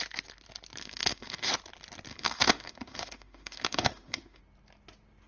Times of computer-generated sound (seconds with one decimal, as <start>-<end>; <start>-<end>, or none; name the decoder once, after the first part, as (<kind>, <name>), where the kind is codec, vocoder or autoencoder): 0.8-1.5 (autoencoder, DAC-VAE); 2.1-4.4